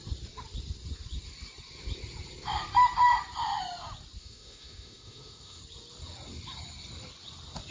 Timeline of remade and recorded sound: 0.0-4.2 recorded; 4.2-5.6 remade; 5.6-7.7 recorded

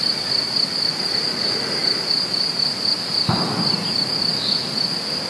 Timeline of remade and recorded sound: 0.0-5.3 recorded

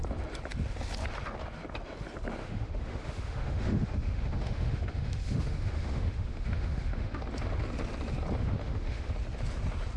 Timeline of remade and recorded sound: 0.0-2.4 recorded; 2.4-7.2 remade; 7.2-8.6 recorded; 8.6-9.1 remade; 9.1-10.0 recorded

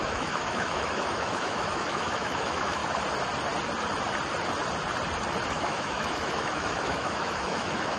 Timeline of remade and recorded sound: 0.0-2.8 remade; 2.8-5.5 recorded; 5.5-8.0 remade

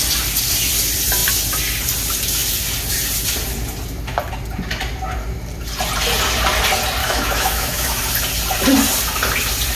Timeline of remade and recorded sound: 0.0-7.0 recorded; 7.0-8.0 remade; 8.0-9.7 recorded

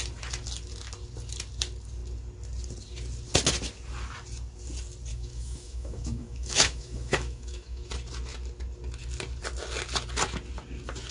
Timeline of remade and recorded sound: 0.0-5.1 recorded; 5.1-7.9 remade; 7.9-11.1 recorded

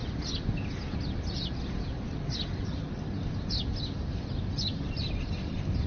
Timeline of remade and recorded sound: 0.0-5.9 recorded